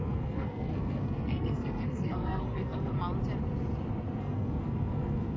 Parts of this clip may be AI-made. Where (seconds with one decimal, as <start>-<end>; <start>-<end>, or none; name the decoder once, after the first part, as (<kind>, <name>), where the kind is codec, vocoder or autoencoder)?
0.0-2.9 (codec, SNAC); 4.2-5.4